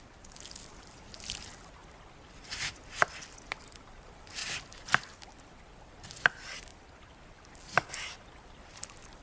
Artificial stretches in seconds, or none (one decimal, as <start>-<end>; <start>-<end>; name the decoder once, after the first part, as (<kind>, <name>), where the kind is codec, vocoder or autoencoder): none